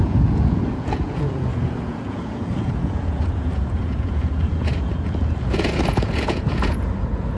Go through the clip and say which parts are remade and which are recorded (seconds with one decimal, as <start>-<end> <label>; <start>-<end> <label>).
0.0-7.4 remade